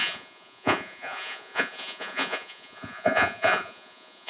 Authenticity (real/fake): fake